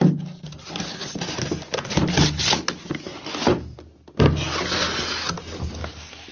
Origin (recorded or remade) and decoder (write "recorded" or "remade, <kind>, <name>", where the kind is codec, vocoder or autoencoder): recorded